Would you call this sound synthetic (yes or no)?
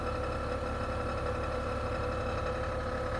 no